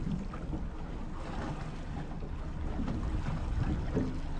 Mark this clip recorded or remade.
recorded